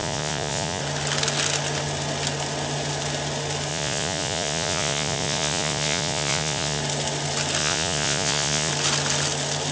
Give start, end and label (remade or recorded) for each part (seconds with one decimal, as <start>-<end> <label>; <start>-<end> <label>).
0.0-0.8 remade; 0.8-3.7 recorded; 3.7-6.8 remade; 6.8-7.6 recorded; 7.6-8.7 remade; 8.7-9.7 recorded